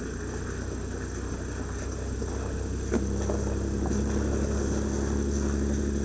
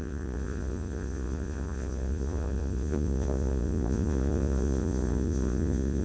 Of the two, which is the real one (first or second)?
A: first